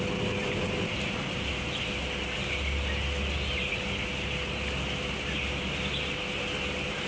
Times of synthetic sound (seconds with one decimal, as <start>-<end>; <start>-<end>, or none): 0.4-1.5